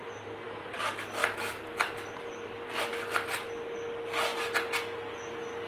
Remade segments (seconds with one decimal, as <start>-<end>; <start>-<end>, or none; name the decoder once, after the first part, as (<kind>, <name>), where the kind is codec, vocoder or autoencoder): none